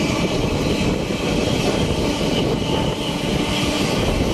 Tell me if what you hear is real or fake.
real